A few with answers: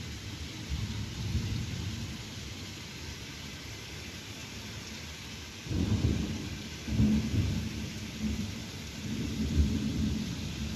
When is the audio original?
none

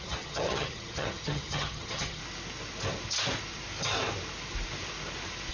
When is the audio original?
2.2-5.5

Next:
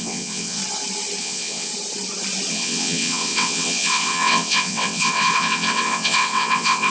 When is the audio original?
0.6-1.2; 1.7-2.5

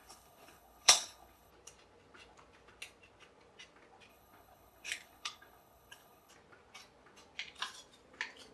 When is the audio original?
1.5-4.1; 6.3-8.5

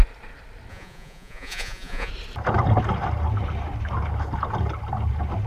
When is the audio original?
0.0-0.7; 2.1-5.5